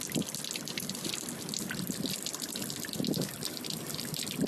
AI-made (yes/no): no